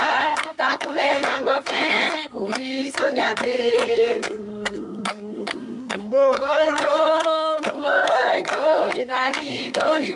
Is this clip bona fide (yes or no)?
no